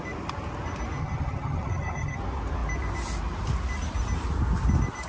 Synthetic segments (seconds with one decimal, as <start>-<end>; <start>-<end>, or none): 1.0-2.2